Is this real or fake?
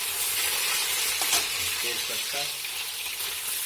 real